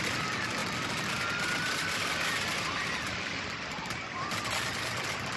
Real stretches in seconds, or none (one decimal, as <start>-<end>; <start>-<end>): 0.0-5.4